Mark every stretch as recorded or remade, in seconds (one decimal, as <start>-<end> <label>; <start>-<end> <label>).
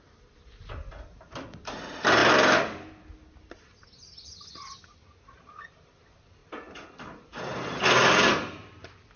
0.0-9.2 recorded